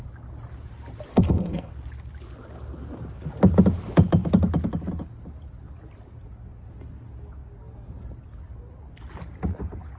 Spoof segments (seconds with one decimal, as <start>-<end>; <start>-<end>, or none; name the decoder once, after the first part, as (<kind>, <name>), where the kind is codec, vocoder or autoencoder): 1.1-1.7 (codec, SNAC)